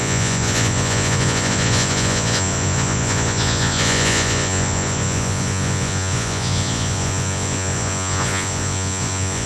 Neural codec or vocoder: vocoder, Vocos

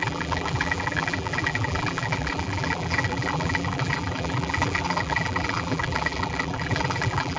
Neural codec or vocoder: vocoder, BigVGAN v2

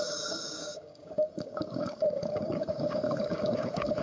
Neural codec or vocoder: codec, DAC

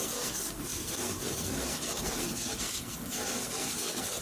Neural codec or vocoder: codec, SNAC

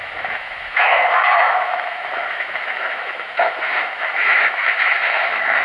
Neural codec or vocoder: autoencoder, DAC-VAE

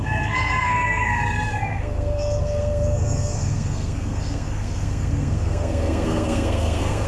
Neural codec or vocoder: codec, SNAC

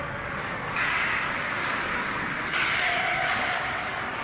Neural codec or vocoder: codec, DAC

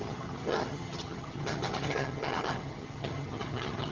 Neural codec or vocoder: vocoder, HiFi-GAN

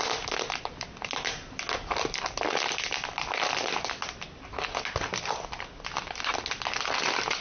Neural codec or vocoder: none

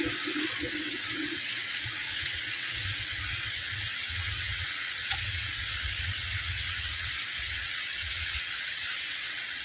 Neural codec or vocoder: vocoder, WaveNeXt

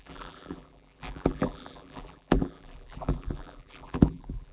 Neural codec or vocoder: vocoder, BigVGAN v2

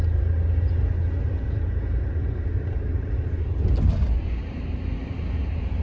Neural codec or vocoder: none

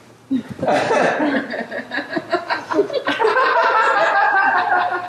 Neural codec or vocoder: none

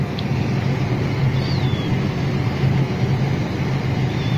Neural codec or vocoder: none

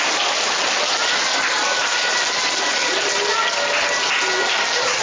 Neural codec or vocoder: none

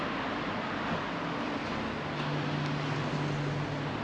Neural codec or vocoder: none